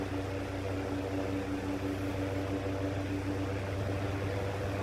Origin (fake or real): real